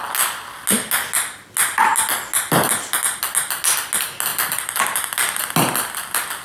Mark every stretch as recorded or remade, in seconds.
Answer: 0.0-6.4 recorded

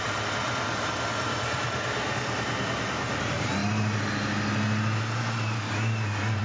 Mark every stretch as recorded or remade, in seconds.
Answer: 0.0-3.6 remade; 3.6-5.2 recorded; 5.2-6.4 remade

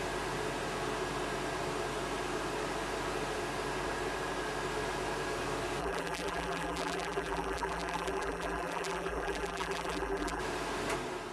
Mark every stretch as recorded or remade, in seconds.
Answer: 0.0-5.8 recorded; 5.8-10.4 remade; 10.4-11.3 recorded

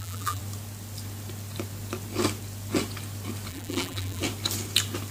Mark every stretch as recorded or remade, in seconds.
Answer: 0.0-0.4 remade; 0.4-3.5 recorded; 3.5-4.2 remade; 4.2-5.1 recorded

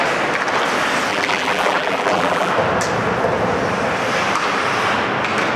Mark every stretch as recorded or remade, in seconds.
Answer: 0.0-1.1 recorded; 1.1-2.5 remade; 2.5-5.6 recorded

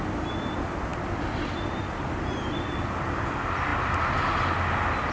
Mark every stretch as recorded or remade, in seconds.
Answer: 0.0-5.1 recorded

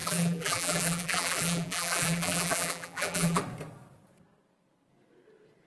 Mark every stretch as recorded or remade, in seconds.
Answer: 0.0-3.4 remade; 3.4-5.7 recorded